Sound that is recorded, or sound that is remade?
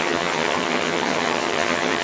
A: remade